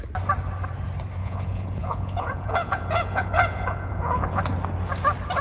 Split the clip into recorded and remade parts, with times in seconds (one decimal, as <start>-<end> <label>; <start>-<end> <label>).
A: 0.0-1.2 recorded; 1.2-4.4 remade; 4.4-5.4 recorded